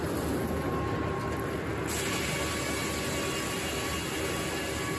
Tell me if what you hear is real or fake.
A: real